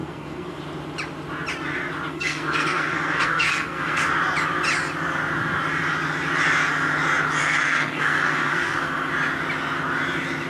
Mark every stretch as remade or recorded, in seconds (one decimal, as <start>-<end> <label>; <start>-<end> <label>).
0.0-0.6 remade; 0.6-2.1 recorded; 2.1-4.1 remade; 4.1-7.4 recorded; 7.4-9.1 remade; 9.1-10.5 recorded